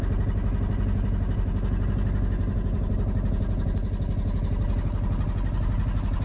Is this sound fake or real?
real